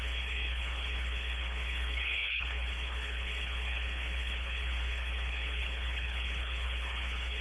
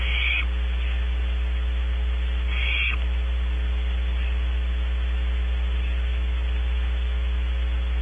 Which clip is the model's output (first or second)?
first